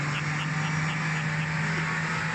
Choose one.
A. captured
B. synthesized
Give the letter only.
A